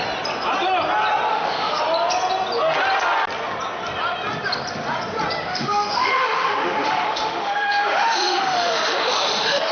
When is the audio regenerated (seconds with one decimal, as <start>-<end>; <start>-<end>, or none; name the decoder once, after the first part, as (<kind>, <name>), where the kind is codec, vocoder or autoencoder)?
1.3-1.8 (autoencoder, DAC-VAE); 5.5-9.7

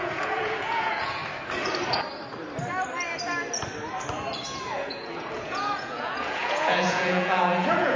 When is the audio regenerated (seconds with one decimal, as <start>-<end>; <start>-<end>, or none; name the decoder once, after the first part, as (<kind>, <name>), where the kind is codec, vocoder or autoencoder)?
0.0-1.2 (vocoder, Vocos); 4.7-8.0